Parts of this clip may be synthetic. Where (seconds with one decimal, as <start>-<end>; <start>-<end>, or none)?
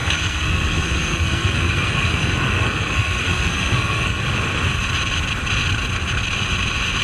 0.0-4.2